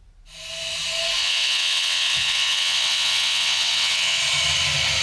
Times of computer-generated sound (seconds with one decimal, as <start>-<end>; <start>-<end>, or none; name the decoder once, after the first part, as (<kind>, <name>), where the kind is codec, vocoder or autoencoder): 1.2-4.2 (vocoder, WaveNeXt)